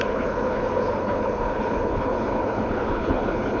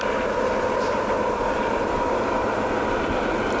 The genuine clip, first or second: second